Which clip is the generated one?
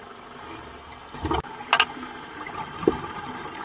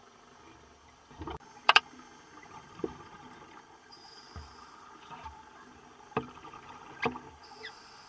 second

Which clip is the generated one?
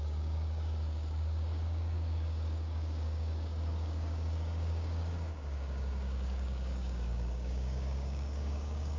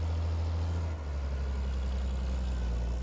first